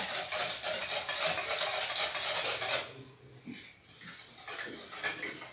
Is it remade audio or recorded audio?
recorded